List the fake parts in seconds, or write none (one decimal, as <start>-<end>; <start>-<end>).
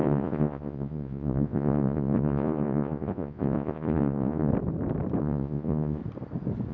0.0-4.5; 5.2-6.0